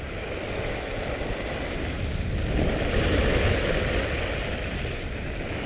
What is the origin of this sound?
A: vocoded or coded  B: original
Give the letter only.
B